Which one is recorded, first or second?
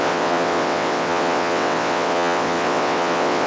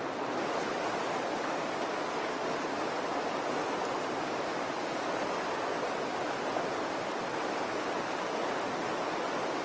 second